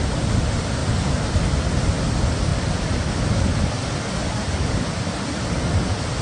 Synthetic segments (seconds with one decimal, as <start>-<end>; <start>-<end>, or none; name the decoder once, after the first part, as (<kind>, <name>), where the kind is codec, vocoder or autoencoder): none